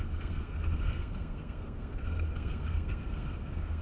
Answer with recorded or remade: remade